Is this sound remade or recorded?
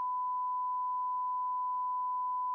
recorded